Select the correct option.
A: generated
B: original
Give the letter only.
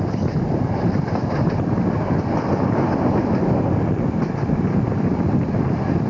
B